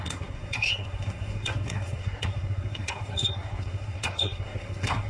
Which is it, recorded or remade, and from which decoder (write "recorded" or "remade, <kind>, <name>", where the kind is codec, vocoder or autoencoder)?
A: remade, codec, SNAC